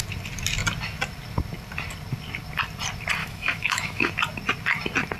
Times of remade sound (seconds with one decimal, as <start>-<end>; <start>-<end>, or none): 3.2-4.1